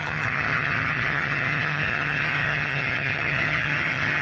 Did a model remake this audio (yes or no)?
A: yes